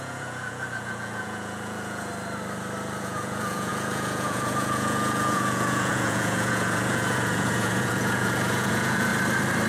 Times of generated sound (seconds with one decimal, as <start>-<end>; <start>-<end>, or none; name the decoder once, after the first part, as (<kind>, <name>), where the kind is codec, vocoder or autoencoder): 0.0-2.1 (vocoder, Vocos); 3.0-9.1